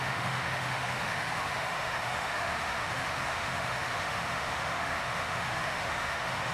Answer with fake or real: fake